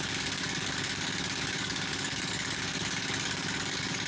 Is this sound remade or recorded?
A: remade